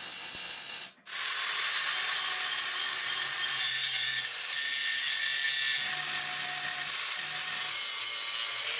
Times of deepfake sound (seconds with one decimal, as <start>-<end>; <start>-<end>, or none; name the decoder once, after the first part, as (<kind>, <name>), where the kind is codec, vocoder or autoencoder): none